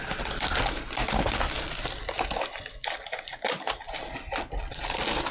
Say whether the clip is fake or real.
real